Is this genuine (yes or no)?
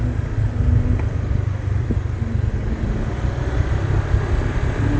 yes